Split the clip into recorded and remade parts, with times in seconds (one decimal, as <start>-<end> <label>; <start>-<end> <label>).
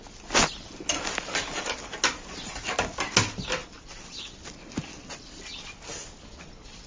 0.0-6.9 recorded